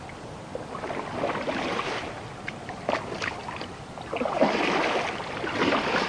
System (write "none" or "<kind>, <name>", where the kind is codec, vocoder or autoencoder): none